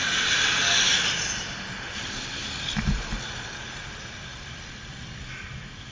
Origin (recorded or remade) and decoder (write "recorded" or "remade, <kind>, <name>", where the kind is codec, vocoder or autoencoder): recorded